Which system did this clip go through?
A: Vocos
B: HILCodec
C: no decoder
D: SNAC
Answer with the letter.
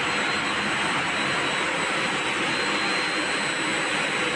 C